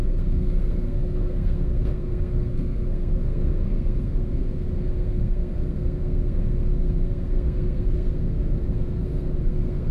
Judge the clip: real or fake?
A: fake